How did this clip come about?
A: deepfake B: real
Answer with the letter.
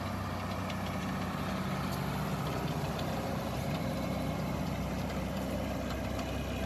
B